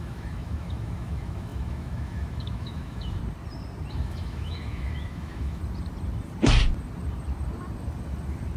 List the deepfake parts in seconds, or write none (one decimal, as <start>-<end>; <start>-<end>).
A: 0.0-3.2; 3.9-5.6